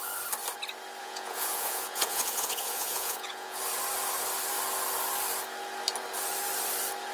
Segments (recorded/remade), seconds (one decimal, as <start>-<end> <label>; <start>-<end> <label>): 0.0-1.0 recorded; 1.0-3.6 remade; 3.6-7.1 recorded